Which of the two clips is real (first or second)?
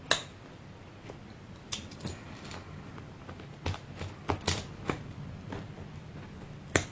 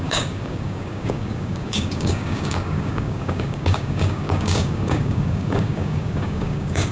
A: first